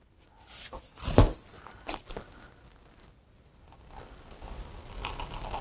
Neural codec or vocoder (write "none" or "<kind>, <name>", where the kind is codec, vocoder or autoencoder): none